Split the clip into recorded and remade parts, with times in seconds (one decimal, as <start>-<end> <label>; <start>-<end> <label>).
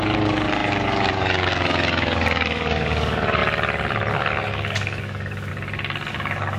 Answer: 0.0-3.4 remade; 3.4-4.1 recorded; 4.1-5.5 remade; 5.5-6.1 recorded; 6.1-6.6 remade